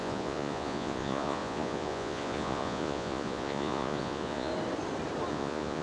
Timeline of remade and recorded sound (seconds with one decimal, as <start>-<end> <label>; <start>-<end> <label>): 0.0-4.5 remade; 4.5-5.3 recorded; 5.3-5.8 remade